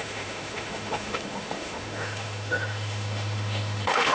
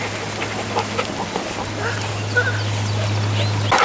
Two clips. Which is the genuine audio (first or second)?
second